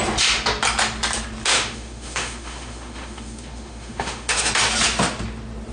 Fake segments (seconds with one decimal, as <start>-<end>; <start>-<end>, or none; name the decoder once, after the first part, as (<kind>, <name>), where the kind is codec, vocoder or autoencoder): 1.5-4.5 (autoencoder, DAC-VAE)